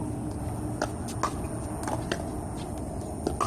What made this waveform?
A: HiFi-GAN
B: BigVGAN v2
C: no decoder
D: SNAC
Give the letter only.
C